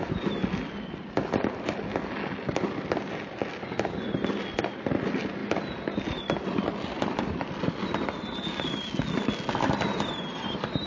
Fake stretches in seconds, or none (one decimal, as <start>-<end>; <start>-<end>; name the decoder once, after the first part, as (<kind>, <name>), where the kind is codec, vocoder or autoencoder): none